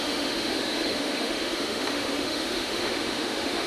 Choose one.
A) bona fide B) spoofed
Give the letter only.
B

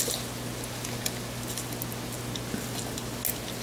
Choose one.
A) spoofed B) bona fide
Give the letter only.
B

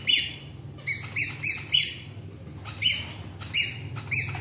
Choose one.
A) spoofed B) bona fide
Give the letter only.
B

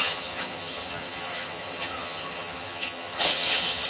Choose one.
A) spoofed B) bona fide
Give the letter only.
A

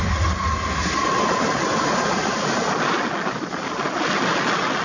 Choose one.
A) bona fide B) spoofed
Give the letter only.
A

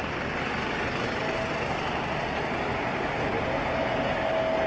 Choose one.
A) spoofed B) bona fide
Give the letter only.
B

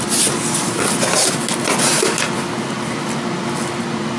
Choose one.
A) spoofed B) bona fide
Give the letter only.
B